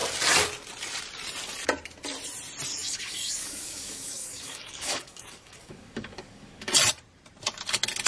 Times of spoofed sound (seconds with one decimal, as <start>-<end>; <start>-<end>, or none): 2.7-6.7

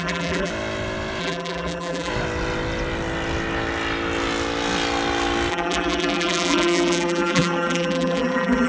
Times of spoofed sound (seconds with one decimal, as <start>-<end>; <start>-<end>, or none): 0.0-0.5; 1.2-2.1; 5.5-8.7

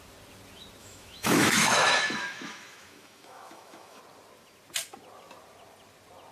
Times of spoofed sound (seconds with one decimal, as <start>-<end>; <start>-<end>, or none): 0.8-4.0

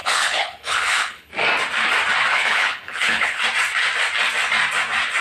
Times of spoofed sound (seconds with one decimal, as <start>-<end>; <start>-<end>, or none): 0.0-1.3; 2.3-3.4

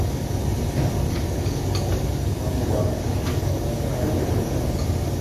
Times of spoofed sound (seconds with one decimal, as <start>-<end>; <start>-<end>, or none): 0.0-0.4; 1.1-5.2